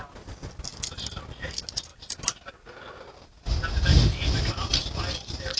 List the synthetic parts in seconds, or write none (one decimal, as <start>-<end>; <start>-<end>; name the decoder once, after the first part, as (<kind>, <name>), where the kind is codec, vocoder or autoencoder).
none

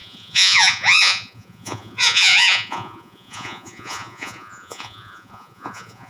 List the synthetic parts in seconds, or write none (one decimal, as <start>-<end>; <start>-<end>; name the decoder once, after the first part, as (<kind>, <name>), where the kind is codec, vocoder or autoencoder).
0.0-6.1 (vocoder, Vocos)

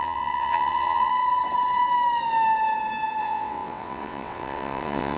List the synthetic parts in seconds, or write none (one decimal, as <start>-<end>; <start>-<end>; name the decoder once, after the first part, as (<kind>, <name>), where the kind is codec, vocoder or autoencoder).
0.0-1.1 (vocoder, WaveNeXt); 3.2-5.2

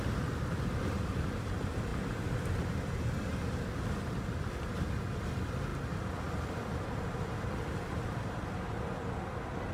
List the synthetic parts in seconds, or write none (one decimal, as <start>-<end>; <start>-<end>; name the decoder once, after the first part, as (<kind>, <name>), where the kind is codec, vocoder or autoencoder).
5.7-8.6 (vocoder, BigVGAN v2)

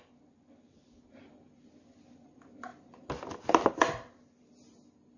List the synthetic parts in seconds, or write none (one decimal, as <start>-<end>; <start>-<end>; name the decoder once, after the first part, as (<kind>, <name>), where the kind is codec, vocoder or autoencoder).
none

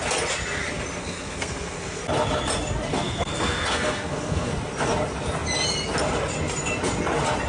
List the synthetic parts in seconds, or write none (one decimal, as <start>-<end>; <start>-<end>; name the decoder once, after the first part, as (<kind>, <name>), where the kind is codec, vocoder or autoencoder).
1.0-2.0 (codec, SNAC); 2.9-4.5